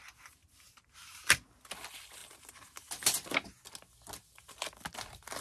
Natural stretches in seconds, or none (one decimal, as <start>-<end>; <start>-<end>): 0.0-0.4; 1.5-5.4

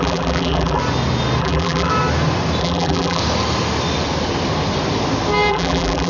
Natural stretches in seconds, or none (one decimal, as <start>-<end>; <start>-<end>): 0.8-1.4; 1.9-2.6; 3.2-5.5